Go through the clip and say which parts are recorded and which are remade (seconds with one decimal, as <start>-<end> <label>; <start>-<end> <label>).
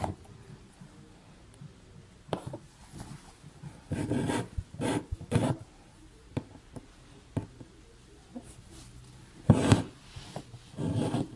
0.0-11.4 recorded